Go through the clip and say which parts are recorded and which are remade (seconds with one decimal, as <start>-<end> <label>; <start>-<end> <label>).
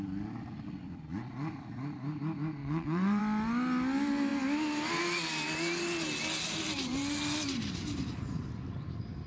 0.0-2.6 recorded; 2.6-3.2 remade; 3.2-9.3 recorded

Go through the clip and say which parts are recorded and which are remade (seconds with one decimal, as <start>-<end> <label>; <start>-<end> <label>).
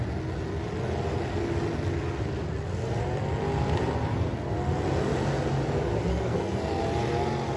0.0-6.1 recorded; 6.1-6.8 remade; 6.8-7.6 recorded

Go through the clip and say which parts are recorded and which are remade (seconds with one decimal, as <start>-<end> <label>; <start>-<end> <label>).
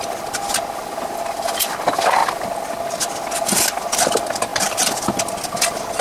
0.0-4.5 recorded; 4.5-5.2 remade; 5.2-6.0 recorded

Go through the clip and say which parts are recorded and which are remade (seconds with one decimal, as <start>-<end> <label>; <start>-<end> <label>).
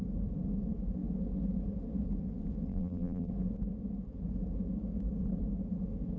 0.0-2.7 recorded; 2.7-3.3 remade; 3.3-6.2 recorded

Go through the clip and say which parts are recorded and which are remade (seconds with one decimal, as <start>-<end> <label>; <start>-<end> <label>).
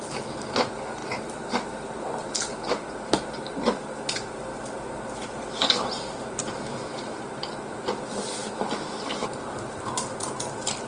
0.0-10.9 recorded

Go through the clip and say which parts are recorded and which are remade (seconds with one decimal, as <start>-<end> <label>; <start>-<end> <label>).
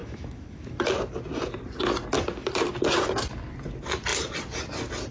0.0-0.9 remade; 0.9-5.1 recorded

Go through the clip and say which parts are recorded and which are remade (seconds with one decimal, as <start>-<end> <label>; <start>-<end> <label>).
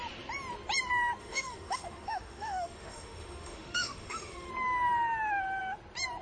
0.0-1.2 recorded; 1.2-4.5 remade; 4.5-6.2 recorded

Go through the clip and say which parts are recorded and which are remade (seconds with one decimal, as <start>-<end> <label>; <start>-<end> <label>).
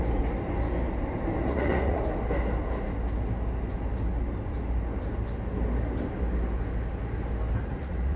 0.0-1.4 recorded; 1.4-2.0 remade; 2.0-7.6 recorded; 7.6-8.2 remade